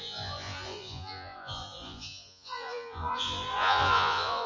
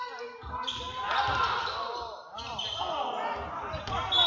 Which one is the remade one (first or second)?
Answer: first